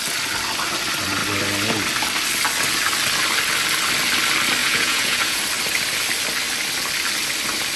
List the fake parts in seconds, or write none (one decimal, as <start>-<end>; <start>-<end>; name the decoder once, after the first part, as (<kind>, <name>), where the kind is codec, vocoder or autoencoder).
4.6-5.4 (vocoder, Vocos)